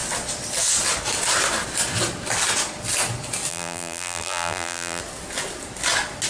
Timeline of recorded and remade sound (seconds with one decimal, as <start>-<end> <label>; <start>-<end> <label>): 0.0-3.5 recorded; 3.5-5.0 remade; 5.0-6.3 recorded